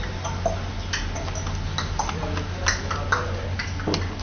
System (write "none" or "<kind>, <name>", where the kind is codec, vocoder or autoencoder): none